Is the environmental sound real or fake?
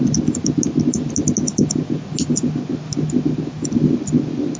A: real